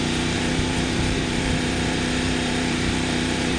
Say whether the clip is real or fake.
fake